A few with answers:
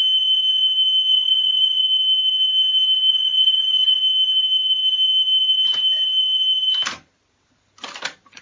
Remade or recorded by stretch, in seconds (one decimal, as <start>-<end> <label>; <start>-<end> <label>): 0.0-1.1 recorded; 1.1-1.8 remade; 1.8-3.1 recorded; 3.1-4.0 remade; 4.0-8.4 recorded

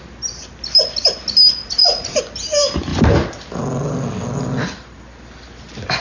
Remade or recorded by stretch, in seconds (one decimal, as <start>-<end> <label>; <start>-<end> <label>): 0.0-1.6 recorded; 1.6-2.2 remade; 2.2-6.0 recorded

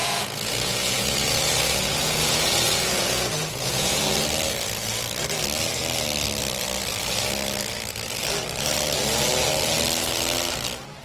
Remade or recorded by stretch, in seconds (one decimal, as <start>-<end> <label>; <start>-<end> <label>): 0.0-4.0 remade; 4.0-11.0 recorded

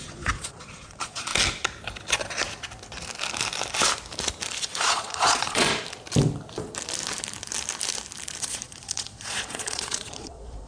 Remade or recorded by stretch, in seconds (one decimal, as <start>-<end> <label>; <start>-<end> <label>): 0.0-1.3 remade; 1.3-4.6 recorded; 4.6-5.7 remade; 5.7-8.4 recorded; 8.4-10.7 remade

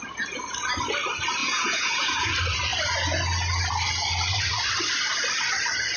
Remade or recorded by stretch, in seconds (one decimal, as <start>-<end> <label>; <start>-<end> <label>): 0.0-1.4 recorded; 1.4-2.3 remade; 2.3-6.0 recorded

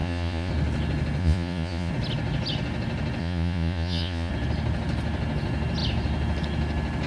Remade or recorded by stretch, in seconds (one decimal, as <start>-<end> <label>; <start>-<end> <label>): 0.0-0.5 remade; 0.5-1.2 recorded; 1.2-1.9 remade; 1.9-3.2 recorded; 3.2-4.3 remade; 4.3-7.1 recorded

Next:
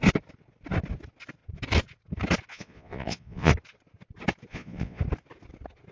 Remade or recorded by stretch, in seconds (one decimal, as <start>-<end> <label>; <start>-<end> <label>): 0.0-2.5 recorded; 2.5-3.5 remade; 3.5-4.5 recorded; 4.5-5.0 remade; 5.0-5.9 recorded

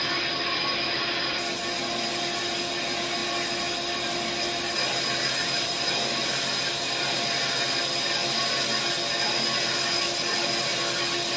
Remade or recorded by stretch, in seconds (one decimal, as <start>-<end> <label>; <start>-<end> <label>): 0.0-11.4 recorded